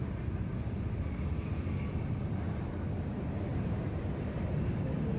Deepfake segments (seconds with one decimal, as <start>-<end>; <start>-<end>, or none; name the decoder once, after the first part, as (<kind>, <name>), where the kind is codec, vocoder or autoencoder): 3.5-4.7 (vocoder, BigVGAN v2)